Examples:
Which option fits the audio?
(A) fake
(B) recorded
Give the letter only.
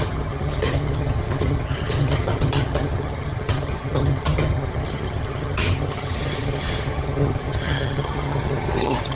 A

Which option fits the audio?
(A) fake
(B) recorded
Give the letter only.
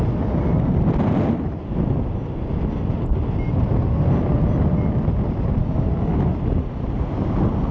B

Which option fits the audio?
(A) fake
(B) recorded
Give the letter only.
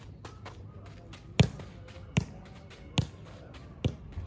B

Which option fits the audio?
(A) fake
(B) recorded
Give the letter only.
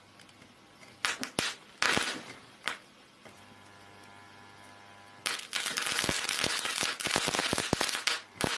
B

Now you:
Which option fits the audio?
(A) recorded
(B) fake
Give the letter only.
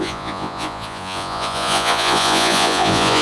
B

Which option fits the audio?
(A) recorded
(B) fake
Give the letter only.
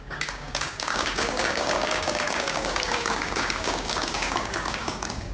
B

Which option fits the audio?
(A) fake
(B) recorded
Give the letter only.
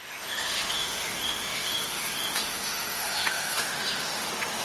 A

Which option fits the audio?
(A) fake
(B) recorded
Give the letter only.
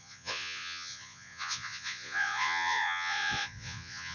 A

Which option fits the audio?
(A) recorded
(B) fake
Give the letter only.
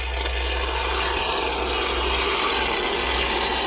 A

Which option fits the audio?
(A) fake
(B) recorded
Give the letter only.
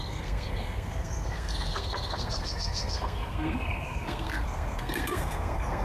A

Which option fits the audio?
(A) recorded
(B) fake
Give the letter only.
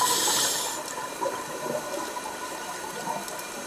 B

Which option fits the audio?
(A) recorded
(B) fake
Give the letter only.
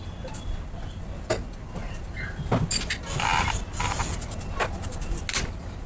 A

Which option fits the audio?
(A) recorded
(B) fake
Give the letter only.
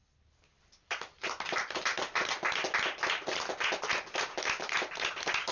A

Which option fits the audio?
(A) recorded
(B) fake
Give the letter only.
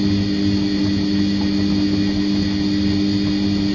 A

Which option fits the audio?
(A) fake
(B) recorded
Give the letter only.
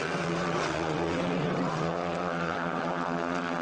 A